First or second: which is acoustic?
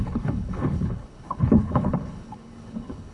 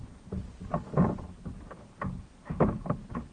second